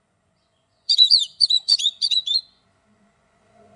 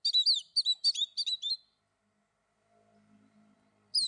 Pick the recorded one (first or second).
second